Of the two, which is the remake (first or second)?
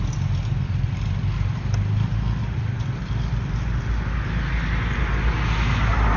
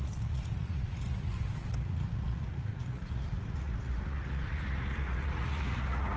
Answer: second